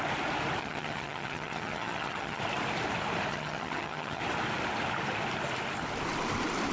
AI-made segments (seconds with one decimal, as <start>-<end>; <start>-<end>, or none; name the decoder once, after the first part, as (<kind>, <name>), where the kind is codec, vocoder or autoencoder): 0.6-2.4 (vocoder, HiFi-GAN); 3.3-4.2